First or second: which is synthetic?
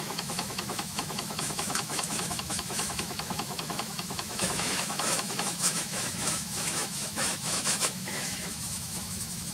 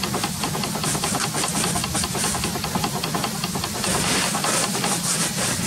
first